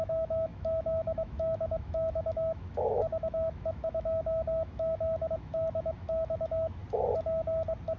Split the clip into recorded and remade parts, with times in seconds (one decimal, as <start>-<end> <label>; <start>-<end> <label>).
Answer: 0.0-6.8 remade; 6.8-8.0 recorded